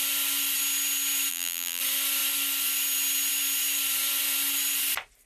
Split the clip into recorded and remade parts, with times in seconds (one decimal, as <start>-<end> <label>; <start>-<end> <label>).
0.0-1.3 recorded; 1.3-1.8 remade; 1.8-5.3 recorded